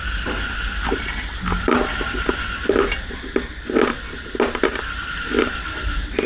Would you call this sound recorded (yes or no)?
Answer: yes